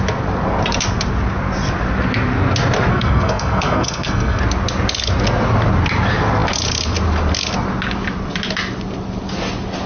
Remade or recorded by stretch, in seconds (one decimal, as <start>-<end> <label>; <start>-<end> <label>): 0.0-2.9 recorded; 2.9-4.4 remade; 4.4-9.9 recorded